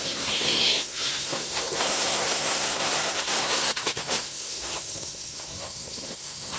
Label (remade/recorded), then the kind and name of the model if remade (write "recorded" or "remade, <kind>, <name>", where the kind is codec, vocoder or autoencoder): remade, codec, SNAC